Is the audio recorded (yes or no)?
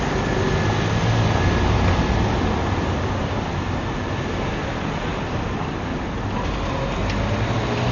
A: yes